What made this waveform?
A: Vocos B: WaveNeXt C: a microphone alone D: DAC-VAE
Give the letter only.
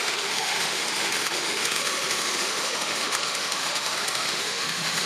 D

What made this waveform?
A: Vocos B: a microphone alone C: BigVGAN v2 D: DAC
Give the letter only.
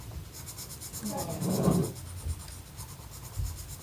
B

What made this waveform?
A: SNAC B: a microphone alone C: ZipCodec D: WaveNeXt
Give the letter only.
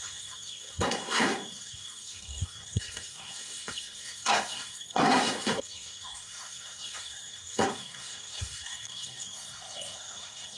A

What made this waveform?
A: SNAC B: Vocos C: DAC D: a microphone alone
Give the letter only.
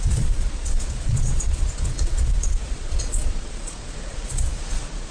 B